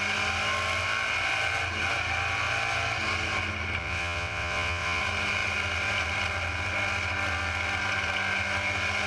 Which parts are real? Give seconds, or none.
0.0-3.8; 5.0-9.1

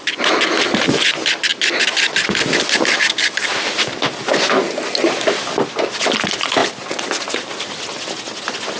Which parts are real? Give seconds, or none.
0.0-8.8

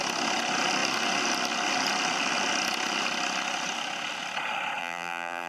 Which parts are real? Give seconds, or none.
0.0-4.8

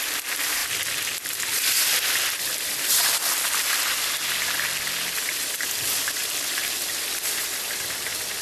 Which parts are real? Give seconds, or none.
0.0-8.4

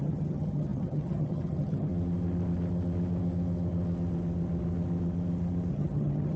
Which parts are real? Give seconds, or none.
1.9-5.7

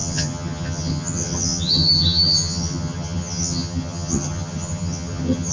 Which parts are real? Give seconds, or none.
none